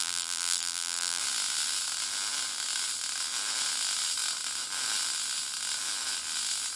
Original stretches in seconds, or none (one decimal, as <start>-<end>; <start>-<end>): 1.2-6.8